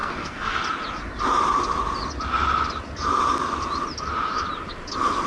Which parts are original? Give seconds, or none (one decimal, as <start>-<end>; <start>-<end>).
0.6-5.3